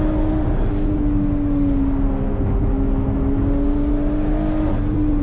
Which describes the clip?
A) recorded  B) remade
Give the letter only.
A